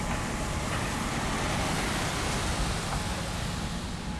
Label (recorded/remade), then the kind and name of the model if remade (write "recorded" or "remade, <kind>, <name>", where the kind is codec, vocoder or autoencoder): recorded